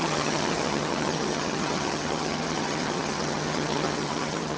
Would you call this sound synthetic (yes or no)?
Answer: yes